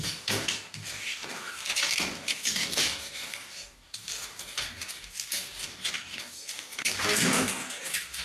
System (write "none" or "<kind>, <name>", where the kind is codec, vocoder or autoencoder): codec, DAC